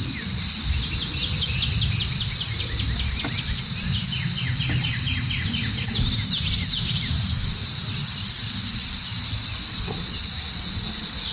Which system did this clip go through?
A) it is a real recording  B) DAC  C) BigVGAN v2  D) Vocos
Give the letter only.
A